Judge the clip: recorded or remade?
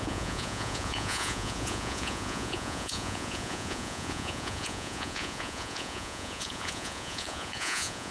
remade